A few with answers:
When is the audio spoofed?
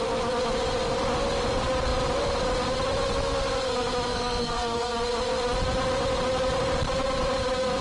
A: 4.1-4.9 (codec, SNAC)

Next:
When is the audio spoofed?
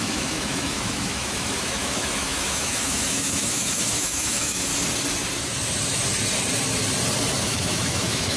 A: 0.0-4.7 (autoencoder, DAC-VAE); 7.4-8.4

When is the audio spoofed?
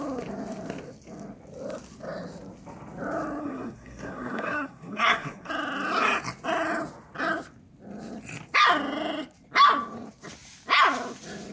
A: 3.4-5.5 (codec, SNAC)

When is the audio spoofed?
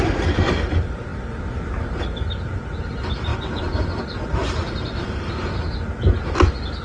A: 3.3-5.3 (vocoder, BigVGAN v2)